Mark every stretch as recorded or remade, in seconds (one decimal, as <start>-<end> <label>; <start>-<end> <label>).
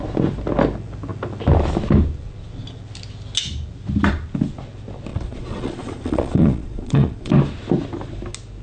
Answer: 0.0-5.1 recorded; 5.1-7.3 remade; 7.3-8.6 recorded